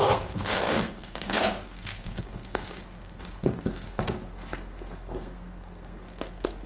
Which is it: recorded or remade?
remade